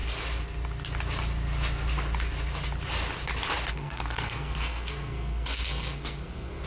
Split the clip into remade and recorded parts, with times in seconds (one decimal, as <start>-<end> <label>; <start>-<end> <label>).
0.0-3.7 recorded; 3.7-6.7 remade